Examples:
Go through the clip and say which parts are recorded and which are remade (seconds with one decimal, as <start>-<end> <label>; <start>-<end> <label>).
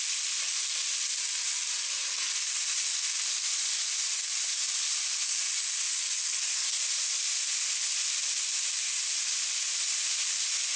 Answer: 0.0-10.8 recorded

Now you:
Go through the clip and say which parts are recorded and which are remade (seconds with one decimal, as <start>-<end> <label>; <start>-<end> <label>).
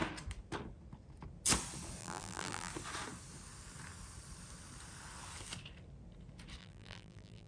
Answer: 0.0-2.0 recorded; 2.0-2.7 remade; 2.7-6.6 recorded; 6.6-7.5 remade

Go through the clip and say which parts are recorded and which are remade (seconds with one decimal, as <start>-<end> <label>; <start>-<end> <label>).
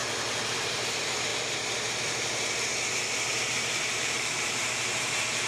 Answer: 0.0-0.6 recorded; 0.6-1.3 remade; 1.3-3.8 recorded; 3.8-5.5 remade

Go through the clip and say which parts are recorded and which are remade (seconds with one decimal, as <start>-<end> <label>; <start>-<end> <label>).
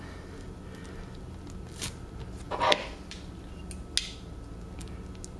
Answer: 0.0-5.4 recorded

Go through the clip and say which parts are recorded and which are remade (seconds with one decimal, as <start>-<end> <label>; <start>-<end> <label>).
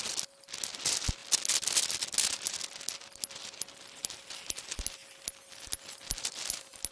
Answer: 0.0-6.9 recorded